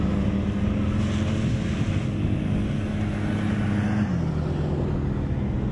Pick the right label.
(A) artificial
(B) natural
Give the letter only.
B